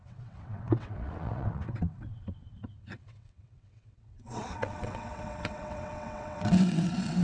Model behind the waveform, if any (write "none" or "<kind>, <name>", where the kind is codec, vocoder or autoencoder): vocoder, WaveNeXt